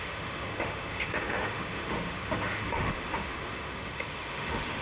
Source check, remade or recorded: remade